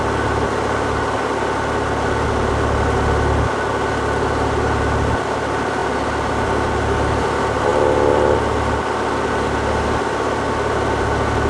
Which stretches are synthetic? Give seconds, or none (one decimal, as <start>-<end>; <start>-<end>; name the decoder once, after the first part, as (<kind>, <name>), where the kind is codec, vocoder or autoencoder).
none